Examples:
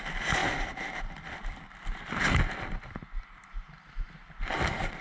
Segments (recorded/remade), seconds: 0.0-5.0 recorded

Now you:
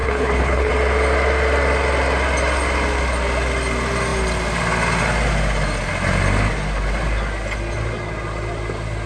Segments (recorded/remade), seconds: 0.0-0.7 remade; 0.7-9.1 recorded

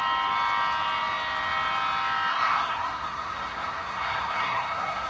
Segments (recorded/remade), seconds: 0.0-2.3 recorded; 2.3-5.1 remade

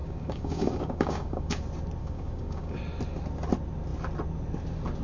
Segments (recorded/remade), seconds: 0.0-1.6 remade; 1.6-2.0 recorded; 2.0-2.8 remade; 2.8-5.0 recorded

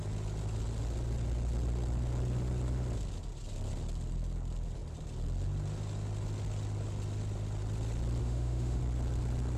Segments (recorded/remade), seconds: 0.0-8.2 recorded; 8.2-8.8 remade; 8.8-9.6 recorded

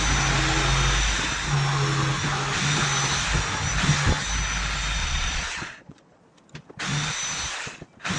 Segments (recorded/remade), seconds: 0.0-5.0 recorded; 5.0-6.2 remade; 6.2-8.2 recorded

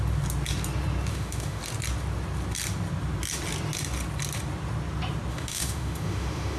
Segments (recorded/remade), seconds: 0.0-1.1 recorded; 1.1-1.6 remade; 1.6-5.3 recorded; 5.3-6.6 remade

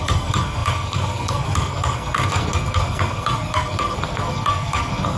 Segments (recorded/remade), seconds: 0.0-5.2 remade